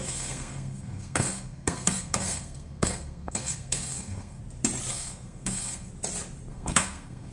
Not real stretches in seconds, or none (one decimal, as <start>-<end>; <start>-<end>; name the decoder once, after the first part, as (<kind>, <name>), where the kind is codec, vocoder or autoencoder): 0.0-4.4 (codec, SNAC); 4.9-5.9; 6.5-7.3